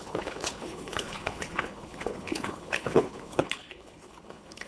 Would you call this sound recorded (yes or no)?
no